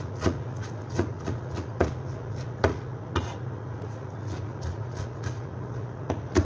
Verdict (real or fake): fake